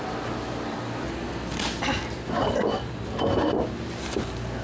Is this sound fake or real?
real